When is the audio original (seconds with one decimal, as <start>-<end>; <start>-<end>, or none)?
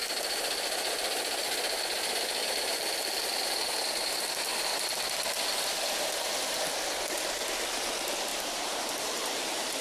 1.0-2.4; 3.3-8.3